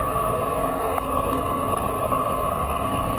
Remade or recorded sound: remade